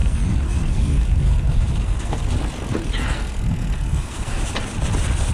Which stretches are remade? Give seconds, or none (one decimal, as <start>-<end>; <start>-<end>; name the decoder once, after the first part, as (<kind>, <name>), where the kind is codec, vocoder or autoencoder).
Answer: 0.0-2.3 (codec, SNAC); 3.0-4.4